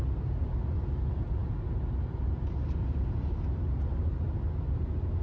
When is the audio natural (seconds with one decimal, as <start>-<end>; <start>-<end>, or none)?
0.0-5.2